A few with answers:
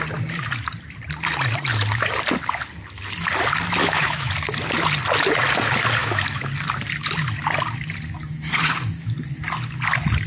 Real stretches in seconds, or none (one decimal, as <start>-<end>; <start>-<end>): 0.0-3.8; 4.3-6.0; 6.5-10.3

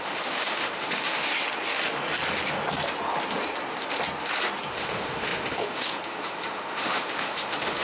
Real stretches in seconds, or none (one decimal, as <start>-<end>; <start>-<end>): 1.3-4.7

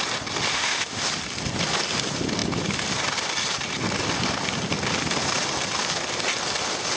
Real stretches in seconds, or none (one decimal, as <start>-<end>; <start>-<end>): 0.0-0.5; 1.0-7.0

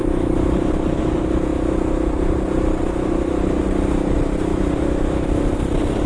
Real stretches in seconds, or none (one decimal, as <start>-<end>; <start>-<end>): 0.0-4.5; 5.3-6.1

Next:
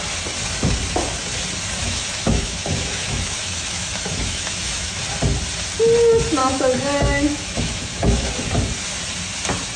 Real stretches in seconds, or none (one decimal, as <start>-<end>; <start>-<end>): 0.0-1.8; 5.0-6.4; 8.3-9.8

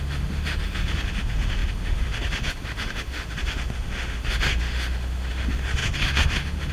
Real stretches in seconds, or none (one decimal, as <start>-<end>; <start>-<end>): none

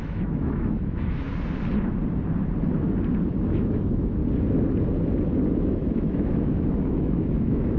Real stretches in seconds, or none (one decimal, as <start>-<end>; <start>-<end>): 1.3-3.5; 4.2-5.5

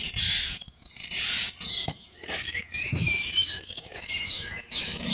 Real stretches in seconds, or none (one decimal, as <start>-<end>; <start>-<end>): 0.0-0.4; 0.9-1.8